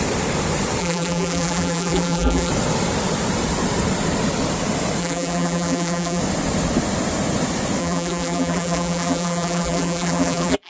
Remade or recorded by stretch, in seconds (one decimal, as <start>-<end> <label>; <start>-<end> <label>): 0.0-0.8 recorded; 0.8-2.5 remade; 2.5-5.0 recorded; 5.0-6.2 remade; 6.2-7.8 recorded; 7.8-10.7 remade